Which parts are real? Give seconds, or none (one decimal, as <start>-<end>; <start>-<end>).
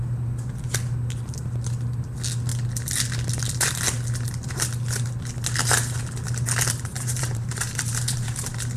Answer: 0.0-6.9